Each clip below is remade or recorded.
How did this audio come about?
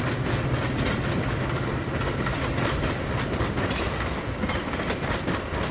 remade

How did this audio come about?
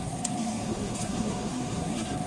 remade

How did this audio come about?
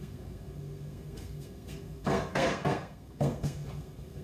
remade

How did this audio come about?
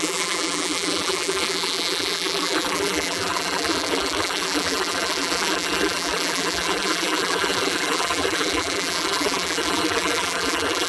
remade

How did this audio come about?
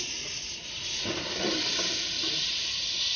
remade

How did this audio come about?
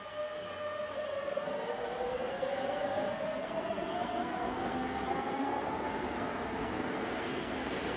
remade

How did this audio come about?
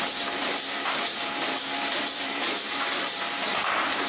remade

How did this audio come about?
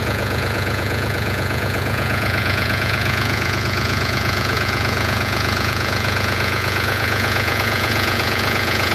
remade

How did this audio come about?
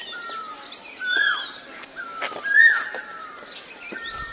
recorded